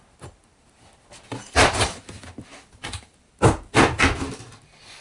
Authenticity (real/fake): real